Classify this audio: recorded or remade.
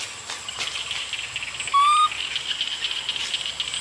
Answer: recorded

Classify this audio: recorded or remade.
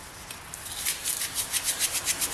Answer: recorded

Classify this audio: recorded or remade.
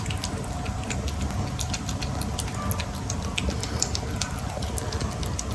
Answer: recorded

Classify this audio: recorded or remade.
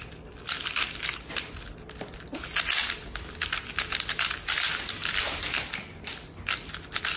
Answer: recorded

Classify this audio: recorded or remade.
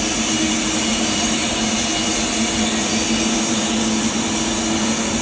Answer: recorded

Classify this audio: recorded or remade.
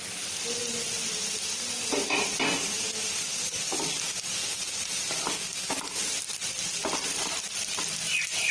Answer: recorded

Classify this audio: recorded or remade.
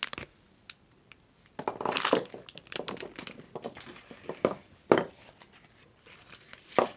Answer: recorded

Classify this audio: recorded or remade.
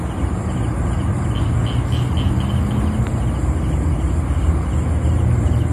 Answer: recorded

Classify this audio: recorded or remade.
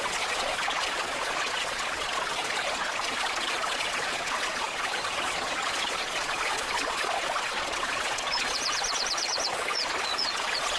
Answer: remade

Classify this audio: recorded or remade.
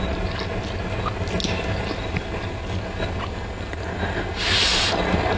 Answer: recorded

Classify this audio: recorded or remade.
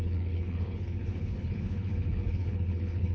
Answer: remade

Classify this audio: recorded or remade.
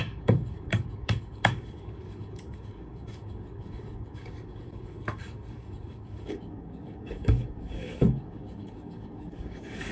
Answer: remade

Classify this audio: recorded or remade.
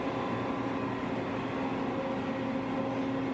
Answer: recorded